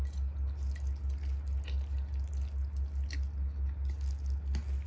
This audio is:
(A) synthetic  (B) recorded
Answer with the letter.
B